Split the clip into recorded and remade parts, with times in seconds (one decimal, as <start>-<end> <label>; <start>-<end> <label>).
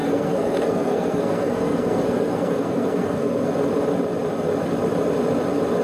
0.0-3.5 remade; 3.5-5.8 recorded